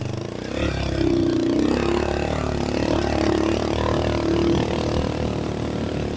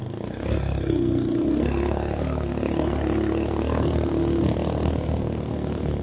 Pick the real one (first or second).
first